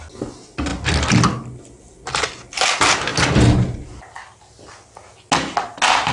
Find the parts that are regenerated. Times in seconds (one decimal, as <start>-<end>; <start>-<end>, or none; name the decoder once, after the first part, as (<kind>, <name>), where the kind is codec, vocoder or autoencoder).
none